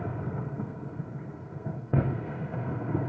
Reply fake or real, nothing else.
fake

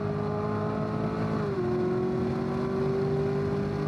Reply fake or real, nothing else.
real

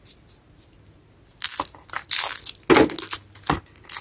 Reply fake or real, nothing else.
real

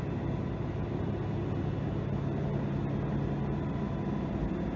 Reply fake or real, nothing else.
real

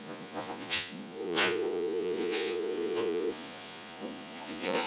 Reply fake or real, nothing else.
fake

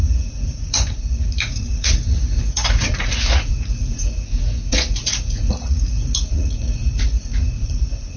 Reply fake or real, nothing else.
fake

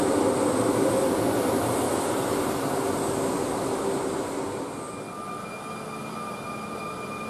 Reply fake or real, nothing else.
real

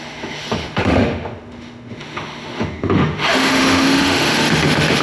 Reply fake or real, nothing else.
fake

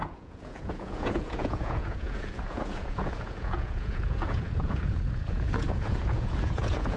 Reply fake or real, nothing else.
fake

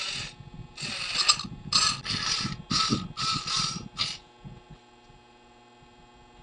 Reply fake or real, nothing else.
real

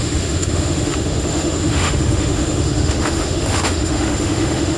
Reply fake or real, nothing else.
fake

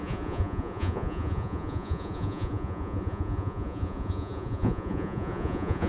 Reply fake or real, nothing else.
fake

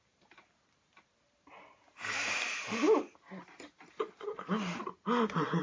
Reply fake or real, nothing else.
fake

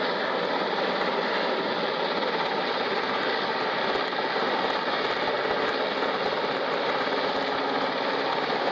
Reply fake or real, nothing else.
real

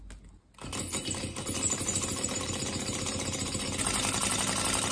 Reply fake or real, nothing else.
real